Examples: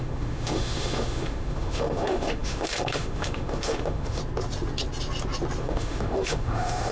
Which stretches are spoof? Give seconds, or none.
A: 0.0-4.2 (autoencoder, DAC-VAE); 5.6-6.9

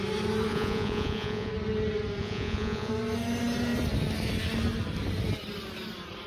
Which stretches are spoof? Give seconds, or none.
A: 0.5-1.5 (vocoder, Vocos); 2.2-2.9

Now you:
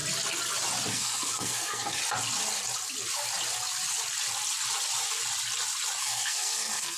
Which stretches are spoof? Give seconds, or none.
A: 0.9-2.0 (codec, SNAC); 6.0-7.0

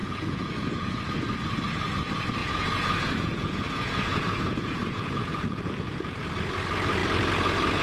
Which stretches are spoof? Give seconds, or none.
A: 0.0-1.0 (vocoder, Vocos); 2.4-6.2

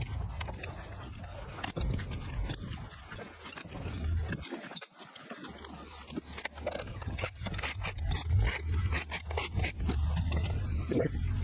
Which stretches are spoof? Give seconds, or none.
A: 6.9-7.5 (vocoder, HiFi-GAN)